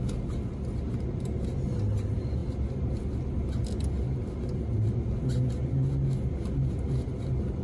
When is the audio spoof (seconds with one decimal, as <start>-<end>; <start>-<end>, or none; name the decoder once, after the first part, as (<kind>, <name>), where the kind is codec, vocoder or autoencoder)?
none